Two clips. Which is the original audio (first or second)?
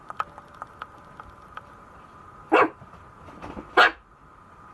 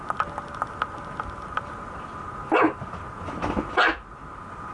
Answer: second